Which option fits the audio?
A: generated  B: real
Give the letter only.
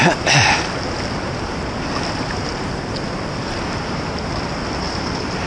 B